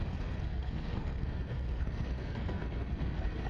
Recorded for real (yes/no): no